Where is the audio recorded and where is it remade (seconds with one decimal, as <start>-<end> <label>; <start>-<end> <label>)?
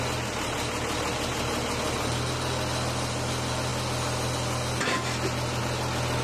0.0-6.2 recorded